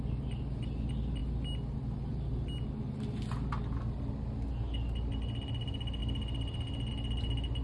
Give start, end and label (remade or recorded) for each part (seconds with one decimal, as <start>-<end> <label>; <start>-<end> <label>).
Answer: 0.0-7.6 recorded